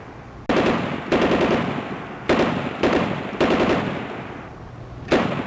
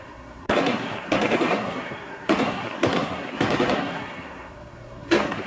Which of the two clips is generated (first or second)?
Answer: second